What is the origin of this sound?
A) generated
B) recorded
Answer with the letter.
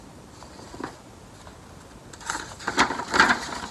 B